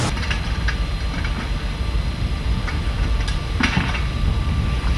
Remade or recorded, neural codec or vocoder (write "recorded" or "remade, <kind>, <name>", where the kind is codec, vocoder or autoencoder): recorded